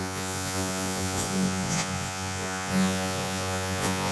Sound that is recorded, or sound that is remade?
remade